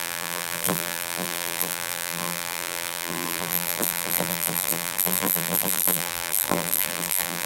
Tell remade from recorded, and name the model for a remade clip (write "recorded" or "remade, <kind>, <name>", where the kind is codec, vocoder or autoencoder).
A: remade, vocoder, BigVGAN v2